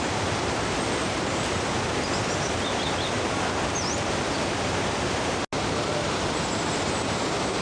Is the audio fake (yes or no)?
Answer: no